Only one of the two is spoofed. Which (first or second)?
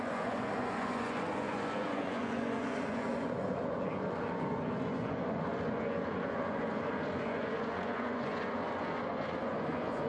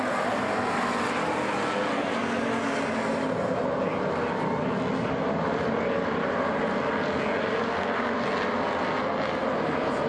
first